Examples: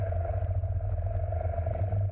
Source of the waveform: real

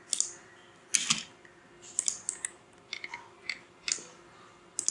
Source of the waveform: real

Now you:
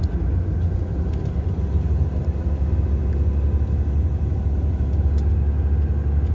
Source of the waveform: real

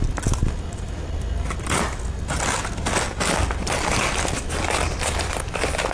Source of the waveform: real